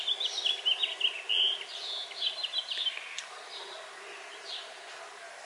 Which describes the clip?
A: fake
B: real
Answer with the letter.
B